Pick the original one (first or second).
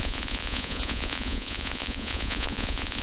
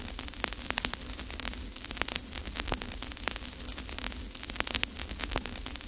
second